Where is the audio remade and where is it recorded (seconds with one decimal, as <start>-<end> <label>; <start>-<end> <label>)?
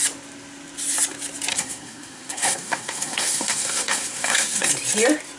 0.0-1.5 recorded; 1.5-4.7 remade; 4.7-5.4 recorded